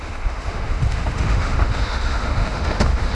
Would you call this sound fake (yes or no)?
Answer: yes